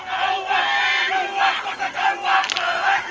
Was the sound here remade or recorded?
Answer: recorded